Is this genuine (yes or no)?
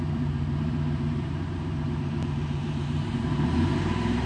no